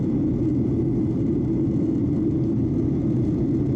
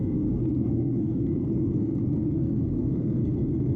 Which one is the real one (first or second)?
first